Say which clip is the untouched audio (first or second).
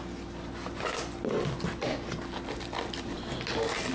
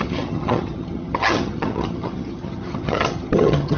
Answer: first